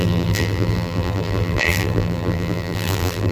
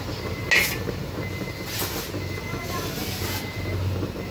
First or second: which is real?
second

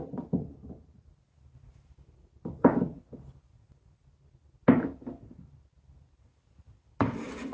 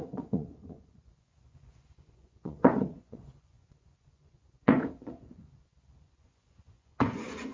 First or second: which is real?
first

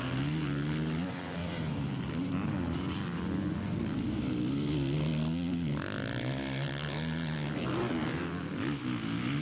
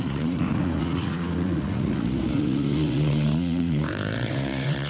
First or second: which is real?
first